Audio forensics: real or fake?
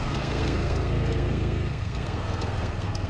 fake